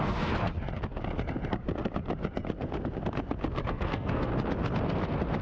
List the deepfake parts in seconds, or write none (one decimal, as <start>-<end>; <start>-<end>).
0.0-0.5; 3.7-4.3